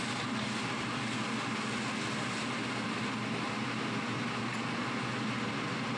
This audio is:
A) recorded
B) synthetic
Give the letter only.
A